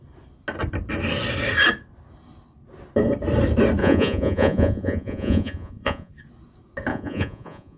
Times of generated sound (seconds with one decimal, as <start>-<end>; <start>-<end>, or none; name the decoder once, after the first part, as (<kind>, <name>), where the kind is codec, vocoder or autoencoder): 3.8-6.1 (vocoder, Vocos); 6.9-7.8